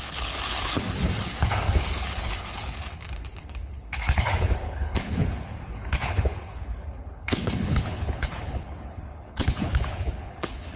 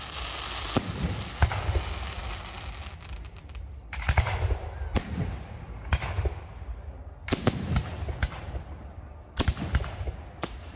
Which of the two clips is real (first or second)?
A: second